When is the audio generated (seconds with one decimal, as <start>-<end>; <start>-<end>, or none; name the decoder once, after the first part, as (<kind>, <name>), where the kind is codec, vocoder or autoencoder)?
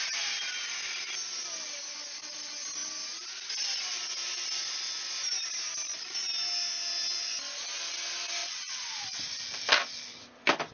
8.4-9.4 (vocoder, WaveNeXt)